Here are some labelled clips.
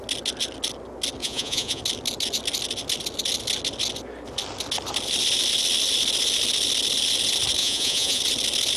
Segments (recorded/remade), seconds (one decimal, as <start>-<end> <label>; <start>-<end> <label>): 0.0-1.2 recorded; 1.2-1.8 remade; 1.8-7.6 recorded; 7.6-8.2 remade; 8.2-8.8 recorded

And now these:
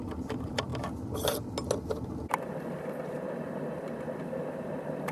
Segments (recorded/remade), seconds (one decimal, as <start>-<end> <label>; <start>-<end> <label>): 0.0-0.7 remade; 0.7-2.3 recorded; 2.3-5.1 remade

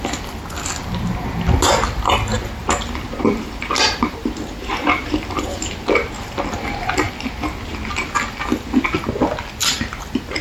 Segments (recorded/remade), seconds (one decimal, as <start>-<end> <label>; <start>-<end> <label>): 0.0-2.6 recorded; 2.6-5.7 remade; 5.7-9.6 recorded; 9.6-10.4 remade